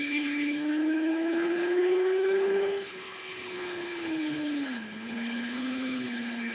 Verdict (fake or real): fake